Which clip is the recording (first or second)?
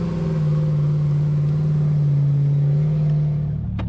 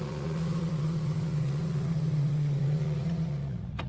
first